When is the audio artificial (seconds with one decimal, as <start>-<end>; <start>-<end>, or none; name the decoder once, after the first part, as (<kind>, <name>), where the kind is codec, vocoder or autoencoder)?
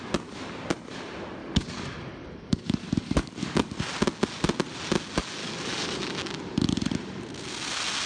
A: 1.4-3.8 (codec, DAC); 5.4-6.3